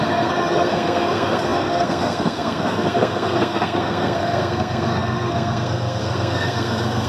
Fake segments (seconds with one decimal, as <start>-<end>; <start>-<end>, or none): 0.0-7.1